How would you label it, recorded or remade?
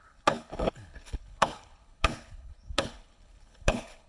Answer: remade